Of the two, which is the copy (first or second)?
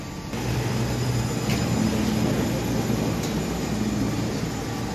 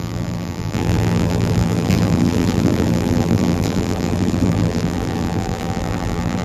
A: second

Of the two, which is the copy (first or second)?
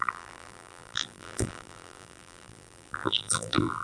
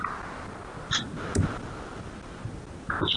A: first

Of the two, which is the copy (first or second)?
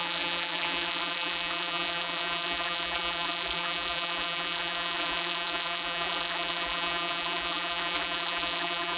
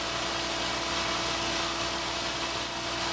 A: first